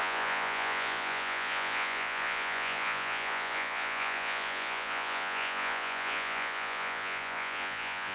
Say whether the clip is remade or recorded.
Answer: remade